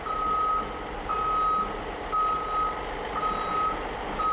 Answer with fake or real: real